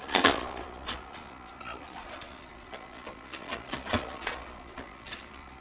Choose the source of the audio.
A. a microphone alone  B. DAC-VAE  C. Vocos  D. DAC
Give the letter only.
C